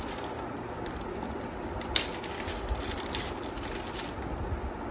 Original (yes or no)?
yes